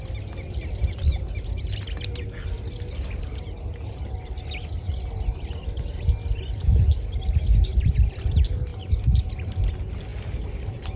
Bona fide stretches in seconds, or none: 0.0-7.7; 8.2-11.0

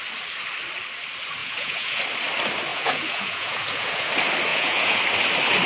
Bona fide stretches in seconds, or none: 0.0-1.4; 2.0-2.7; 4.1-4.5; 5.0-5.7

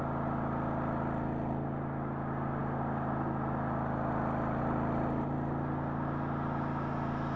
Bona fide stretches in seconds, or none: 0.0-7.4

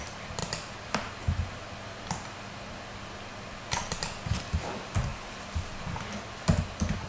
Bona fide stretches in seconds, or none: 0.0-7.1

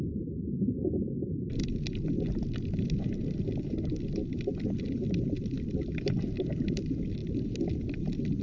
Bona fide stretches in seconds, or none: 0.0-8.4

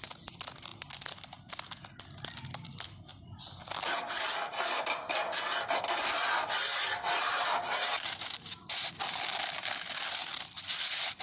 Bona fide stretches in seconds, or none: 0.0-11.2

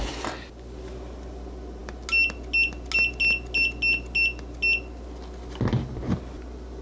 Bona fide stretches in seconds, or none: 0.0-6.8

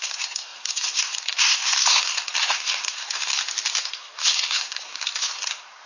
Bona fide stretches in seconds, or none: 3.3-3.8